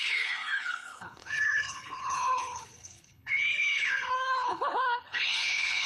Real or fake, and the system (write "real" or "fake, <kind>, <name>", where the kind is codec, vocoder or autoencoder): fake, codec, HILCodec